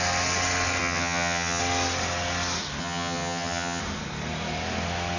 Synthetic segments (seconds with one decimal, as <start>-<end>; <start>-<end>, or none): 0.8-1.6; 2.8-3.8